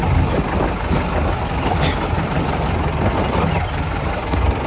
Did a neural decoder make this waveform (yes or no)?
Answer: no